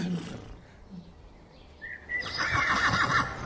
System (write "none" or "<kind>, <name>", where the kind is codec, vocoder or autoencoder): none